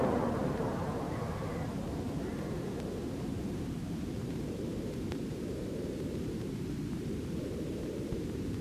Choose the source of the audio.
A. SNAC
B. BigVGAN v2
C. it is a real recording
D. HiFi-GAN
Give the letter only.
B